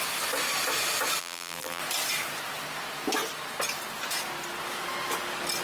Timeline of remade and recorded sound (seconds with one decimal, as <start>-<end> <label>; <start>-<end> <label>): 0.0-1.2 recorded; 1.2-1.8 remade; 1.8-5.6 recorded